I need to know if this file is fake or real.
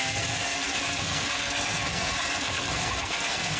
fake